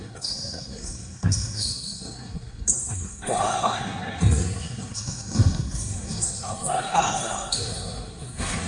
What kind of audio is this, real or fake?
fake